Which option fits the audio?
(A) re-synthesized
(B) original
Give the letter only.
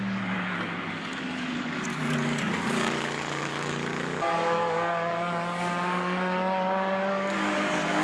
A